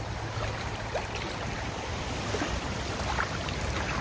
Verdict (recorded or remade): recorded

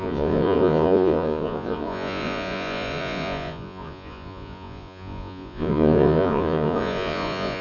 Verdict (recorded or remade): remade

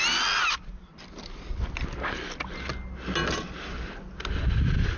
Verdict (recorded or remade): recorded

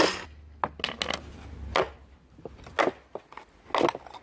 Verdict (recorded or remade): recorded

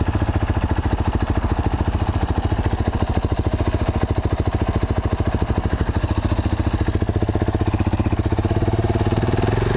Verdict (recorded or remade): recorded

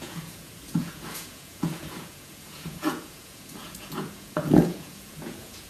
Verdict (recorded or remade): remade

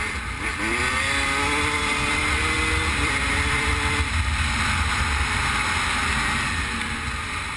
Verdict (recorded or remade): recorded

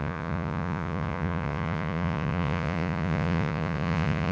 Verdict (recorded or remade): remade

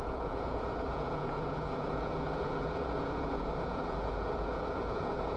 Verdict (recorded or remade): remade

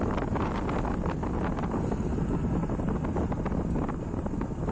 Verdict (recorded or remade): recorded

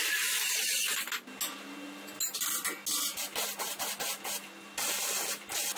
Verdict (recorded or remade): recorded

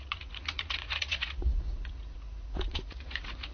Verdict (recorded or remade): remade